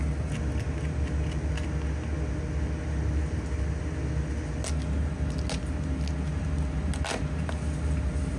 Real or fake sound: real